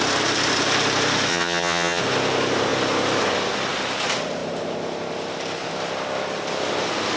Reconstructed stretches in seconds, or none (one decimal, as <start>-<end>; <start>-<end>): 1.3-2.0